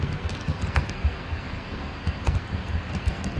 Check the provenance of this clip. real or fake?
fake